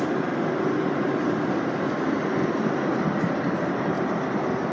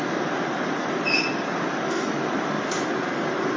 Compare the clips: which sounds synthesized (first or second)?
first